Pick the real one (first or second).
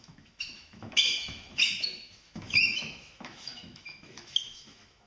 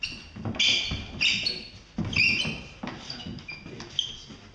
second